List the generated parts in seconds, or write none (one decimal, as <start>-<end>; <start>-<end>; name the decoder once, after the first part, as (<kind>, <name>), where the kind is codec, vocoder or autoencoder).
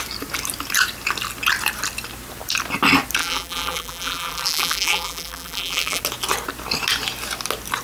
3.2-6.0 (vocoder, BigVGAN v2)